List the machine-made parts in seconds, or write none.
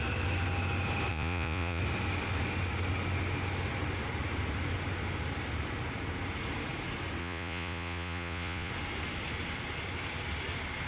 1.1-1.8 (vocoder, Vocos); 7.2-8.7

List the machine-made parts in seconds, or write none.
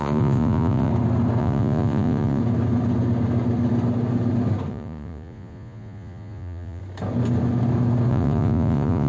0.0-0.9 (vocoder, Vocos); 1.4-2.4; 4.7-6.8; 8.1-9.1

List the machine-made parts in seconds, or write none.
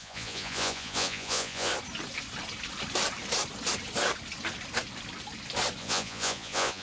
0.0-1.7 (vocoder, Vocos); 5.8-6.8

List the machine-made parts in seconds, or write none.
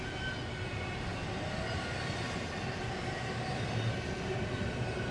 none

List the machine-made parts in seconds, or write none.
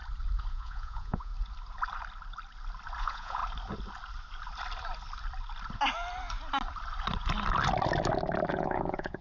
0.5-1.3 (vocoder, Vocos); 3.0-3.4; 8.5-9.2